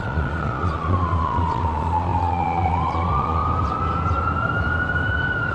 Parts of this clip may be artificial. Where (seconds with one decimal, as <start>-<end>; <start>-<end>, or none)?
0.0-3.4